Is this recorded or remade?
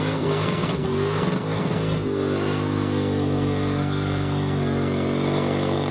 remade